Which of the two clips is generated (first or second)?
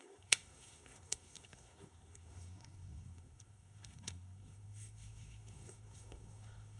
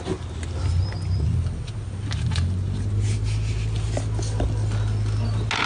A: first